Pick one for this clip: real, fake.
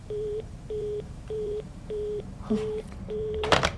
fake